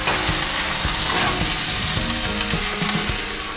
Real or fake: real